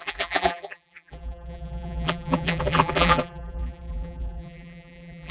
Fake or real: fake